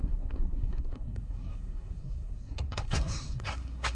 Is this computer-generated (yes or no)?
yes